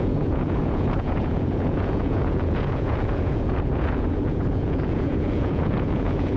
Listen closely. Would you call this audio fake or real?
fake